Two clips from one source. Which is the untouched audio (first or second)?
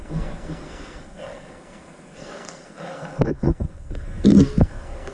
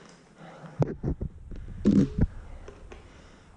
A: second